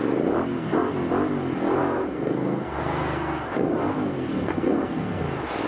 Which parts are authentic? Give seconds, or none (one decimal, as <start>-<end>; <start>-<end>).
0.0-0.5; 1.1-1.8; 5.2-5.7